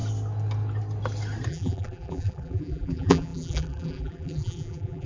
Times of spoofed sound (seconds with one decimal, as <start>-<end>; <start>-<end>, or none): 1.5-5.1